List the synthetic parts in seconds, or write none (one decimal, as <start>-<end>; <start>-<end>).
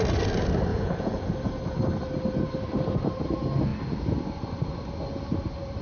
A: 0.7-1.3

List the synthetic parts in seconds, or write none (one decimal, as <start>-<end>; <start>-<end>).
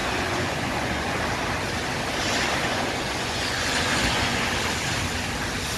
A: 0.0-1.2; 2.6-4.5